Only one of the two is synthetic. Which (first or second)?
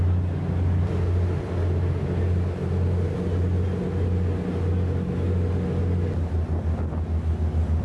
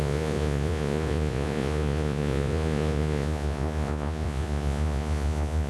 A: second